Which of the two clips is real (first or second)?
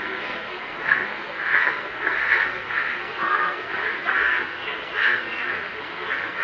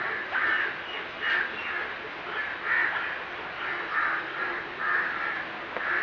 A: second